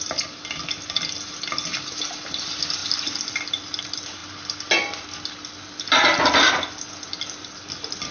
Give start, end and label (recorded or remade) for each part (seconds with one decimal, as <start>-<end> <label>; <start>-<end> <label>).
0.0-8.1 recorded

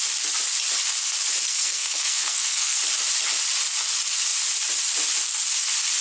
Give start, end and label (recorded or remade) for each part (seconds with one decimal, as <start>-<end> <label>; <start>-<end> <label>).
0.0-1.5 recorded; 1.5-2.8 remade; 2.8-6.0 recorded

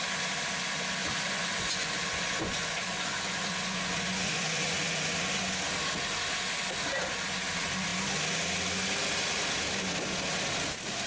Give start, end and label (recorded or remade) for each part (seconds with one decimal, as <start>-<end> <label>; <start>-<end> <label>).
0.0-1.0 recorded; 1.0-5.5 remade; 5.5-11.1 recorded

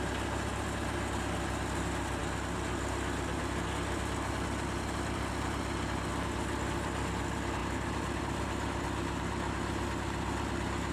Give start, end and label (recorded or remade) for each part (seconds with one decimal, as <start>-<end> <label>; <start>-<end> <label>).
0.0-10.9 recorded

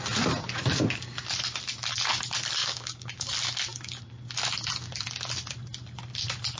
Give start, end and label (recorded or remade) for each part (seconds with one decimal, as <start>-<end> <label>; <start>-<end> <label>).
0.0-2.6 recorded; 2.6-3.3 remade; 3.3-6.6 recorded